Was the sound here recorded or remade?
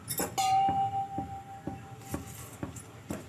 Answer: recorded